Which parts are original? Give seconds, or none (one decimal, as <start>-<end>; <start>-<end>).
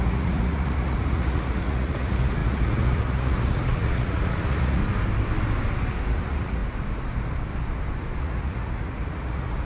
4.8-6.1; 6.6-8.2